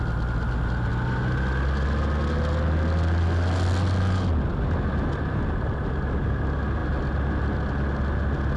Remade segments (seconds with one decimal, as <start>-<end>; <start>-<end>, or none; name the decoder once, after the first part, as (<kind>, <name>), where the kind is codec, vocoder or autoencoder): none

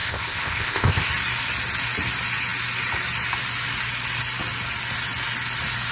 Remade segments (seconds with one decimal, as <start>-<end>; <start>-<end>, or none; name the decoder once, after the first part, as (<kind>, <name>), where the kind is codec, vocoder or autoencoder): 0.0-1.1 (codec, ZipCodec)

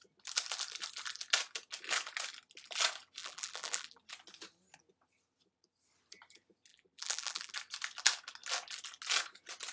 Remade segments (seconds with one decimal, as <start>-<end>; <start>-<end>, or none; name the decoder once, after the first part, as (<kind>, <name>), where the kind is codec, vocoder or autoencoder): 3.2-4.0 (vocoder, BigVGAN v2); 6.7-7.5